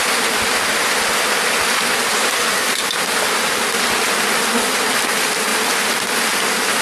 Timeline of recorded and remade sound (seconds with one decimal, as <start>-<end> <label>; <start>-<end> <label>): 0.0-6.8 recorded